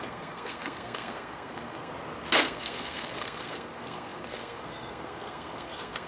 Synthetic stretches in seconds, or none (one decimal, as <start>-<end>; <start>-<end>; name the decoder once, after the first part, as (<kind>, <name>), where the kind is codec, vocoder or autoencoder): 0.0-1.9 (codec, SNAC); 2.4-6.1